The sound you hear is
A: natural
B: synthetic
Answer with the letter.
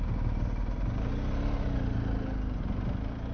A